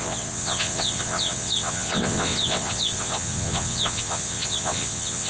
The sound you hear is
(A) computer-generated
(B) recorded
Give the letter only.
A